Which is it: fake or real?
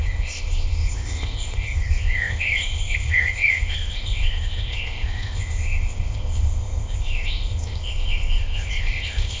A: fake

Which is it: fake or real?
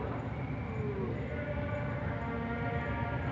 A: real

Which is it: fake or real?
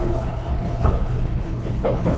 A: fake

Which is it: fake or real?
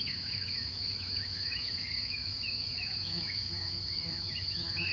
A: fake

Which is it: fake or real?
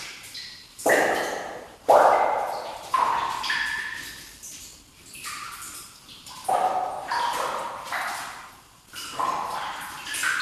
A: real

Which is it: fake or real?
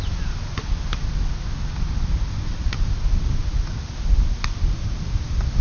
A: real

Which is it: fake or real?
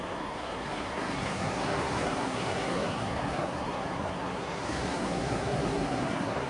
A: fake